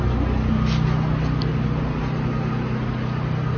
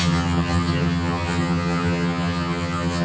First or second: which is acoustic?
first